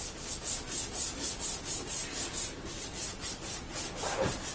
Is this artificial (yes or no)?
no